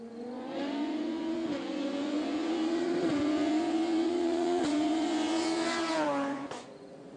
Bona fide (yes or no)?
no